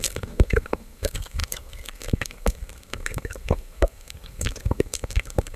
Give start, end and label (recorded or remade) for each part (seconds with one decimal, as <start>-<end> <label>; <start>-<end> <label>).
0.0-5.6 remade